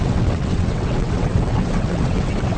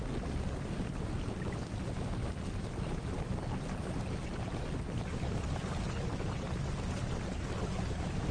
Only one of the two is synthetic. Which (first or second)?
first